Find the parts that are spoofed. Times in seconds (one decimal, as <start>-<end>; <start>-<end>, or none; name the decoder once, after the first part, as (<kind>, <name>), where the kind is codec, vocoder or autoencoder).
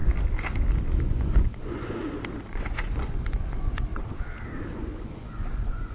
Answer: 1.0-2.0 (vocoder, Vocos); 2.5-3.9; 4.7-5.9